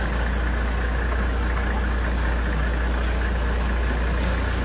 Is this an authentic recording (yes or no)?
yes